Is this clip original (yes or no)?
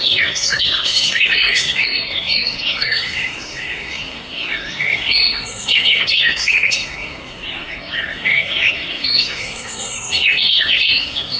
no